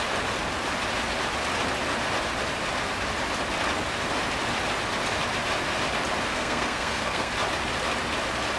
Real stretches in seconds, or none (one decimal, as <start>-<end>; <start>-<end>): 0.0-6.3; 7.3-8.6